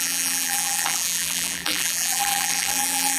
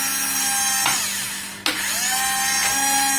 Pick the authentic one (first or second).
second